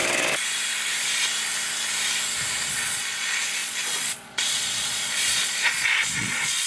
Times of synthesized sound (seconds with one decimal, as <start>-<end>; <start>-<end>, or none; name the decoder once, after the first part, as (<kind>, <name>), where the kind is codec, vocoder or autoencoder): 2.7-6.7 (vocoder, Vocos)